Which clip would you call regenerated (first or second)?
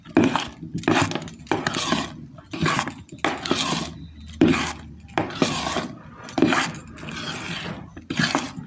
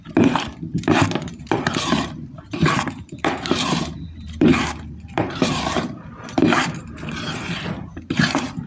second